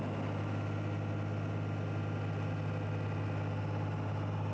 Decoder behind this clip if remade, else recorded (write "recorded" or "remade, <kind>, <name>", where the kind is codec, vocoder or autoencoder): recorded